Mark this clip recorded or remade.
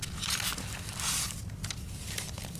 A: recorded